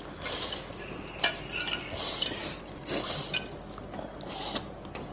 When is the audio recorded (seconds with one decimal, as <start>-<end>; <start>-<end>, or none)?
0.0-5.1